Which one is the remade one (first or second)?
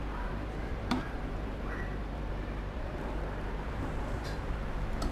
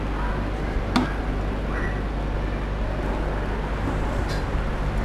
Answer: first